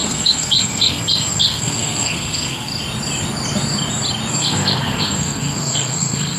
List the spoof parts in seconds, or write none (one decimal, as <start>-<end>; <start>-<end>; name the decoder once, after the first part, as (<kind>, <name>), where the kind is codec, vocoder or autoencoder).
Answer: 0.0-2.7 (codec, SNAC); 4.3-6.4